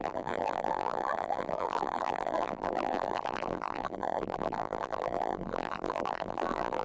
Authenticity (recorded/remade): remade